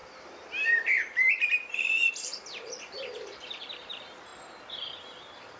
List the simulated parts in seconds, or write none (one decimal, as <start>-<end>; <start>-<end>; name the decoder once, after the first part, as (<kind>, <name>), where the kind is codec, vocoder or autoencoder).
0.0-4.3 (vocoder, BigVGAN v2); 5.0-5.6